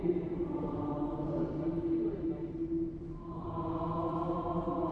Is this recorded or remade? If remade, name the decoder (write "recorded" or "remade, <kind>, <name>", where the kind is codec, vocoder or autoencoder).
remade, vocoder, BigVGAN v2